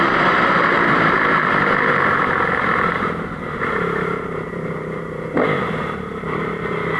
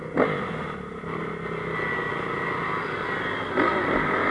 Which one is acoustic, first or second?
second